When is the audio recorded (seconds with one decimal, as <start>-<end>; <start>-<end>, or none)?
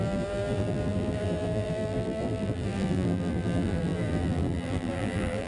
none